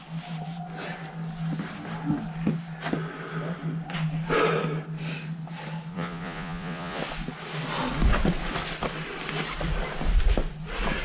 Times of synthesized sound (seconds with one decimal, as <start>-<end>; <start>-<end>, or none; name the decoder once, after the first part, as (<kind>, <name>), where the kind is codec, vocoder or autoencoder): 5.9-7.0 (vocoder, Vocos)